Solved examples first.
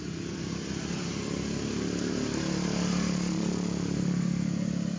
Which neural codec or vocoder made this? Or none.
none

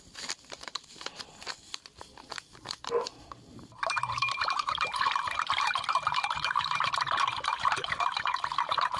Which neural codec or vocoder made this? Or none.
vocoder, BigVGAN v2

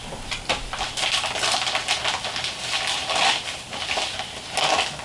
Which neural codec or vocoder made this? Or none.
none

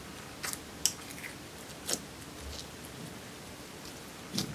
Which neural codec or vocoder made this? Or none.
none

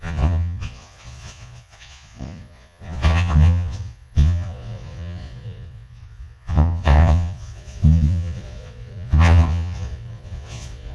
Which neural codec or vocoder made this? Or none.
vocoder, Vocos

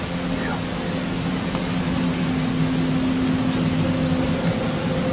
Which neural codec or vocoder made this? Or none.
none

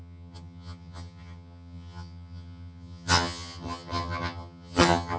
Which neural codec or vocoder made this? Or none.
vocoder, HiFi-GAN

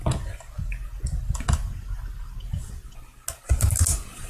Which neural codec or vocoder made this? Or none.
none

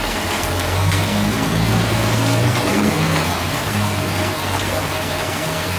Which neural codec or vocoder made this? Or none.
codec, SNAC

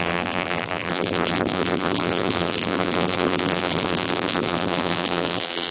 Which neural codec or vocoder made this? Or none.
vocoder, BigVGAN v2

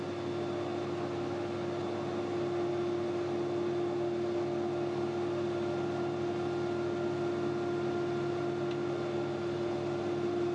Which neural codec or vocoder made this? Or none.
none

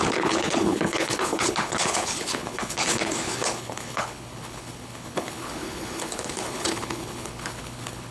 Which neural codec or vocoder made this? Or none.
codec, HILCodec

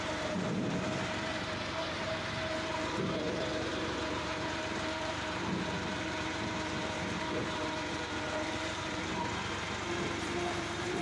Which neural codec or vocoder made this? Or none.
vocoder, BigVGAN v2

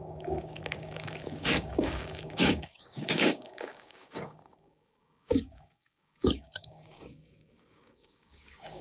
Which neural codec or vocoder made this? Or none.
codec, DAC